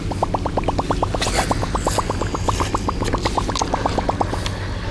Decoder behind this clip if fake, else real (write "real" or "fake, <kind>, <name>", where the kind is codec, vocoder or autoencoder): real